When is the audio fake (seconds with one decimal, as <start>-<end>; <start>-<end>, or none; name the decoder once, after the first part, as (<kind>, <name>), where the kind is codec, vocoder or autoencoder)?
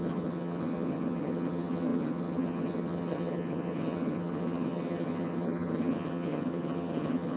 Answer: 0.0-7.4 (vocoder, HiFi-GAN)